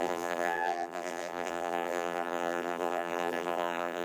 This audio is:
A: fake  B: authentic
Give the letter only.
A